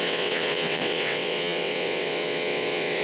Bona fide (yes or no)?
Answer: no